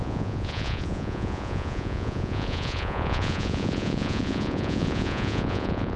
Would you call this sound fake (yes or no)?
yes